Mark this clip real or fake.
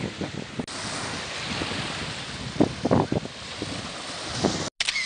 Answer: real